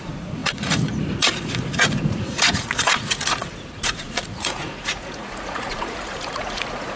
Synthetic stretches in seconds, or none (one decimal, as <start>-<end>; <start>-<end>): 0.0-7.0